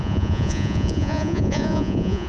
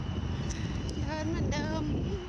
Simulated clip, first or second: first